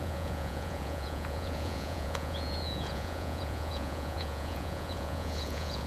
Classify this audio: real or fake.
fake